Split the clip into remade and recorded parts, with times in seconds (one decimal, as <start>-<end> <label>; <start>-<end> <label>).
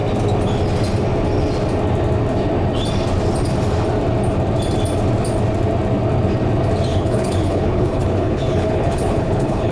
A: 0.0-6.9 recorded; 6.9-9.7 remade